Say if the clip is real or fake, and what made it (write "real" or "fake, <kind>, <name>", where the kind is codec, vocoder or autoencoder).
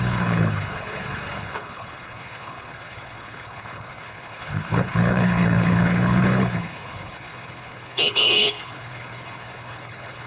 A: fake, codec, HILCodec